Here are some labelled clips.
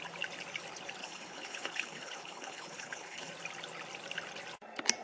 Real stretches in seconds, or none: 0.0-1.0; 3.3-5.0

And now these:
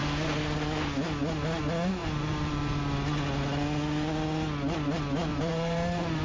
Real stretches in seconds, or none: 0.0-2.0; 2.8-5.3

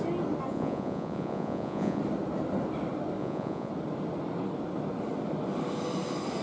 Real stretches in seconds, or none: 0.0-0.5; 2.0-3.2; 3.7-6.4

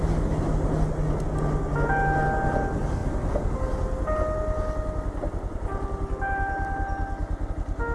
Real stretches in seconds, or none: 0.0-7.9